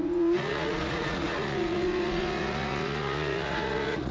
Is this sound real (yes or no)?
no